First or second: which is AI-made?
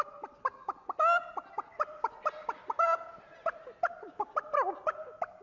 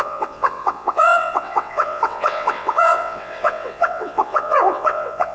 second